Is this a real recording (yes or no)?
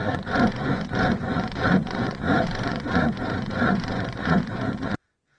no